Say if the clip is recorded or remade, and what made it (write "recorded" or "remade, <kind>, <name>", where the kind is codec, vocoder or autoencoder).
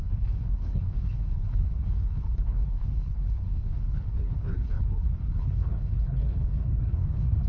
remade, codec, HILCodec